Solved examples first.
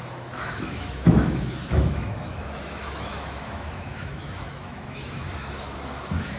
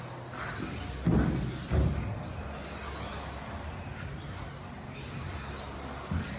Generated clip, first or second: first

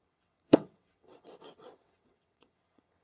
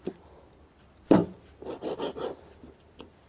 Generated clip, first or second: first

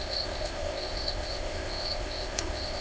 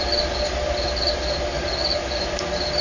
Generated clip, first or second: first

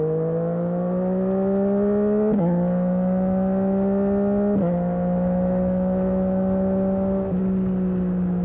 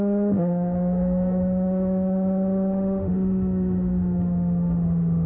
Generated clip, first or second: second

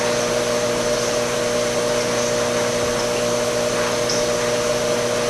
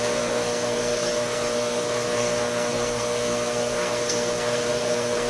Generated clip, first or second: second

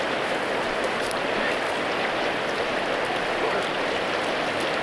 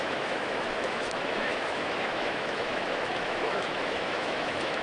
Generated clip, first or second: second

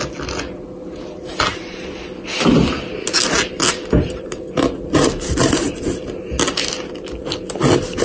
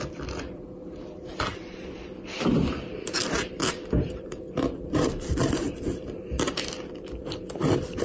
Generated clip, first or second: second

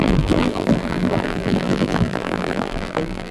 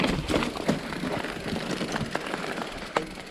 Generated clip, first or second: first